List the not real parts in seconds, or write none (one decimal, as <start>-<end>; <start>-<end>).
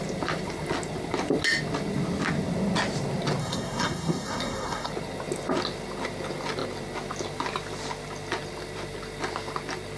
3.4-4.9